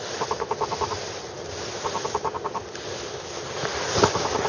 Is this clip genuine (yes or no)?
yes